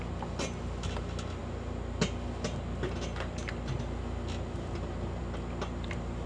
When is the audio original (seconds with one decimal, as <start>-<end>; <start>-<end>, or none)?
0.0-6.3